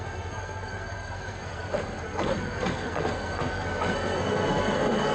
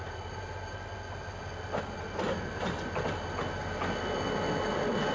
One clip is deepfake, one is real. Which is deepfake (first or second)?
first